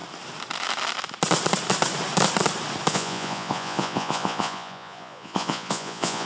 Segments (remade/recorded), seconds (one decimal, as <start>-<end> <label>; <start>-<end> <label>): 0.0-2.9 recorded; 2.9-6.3 remade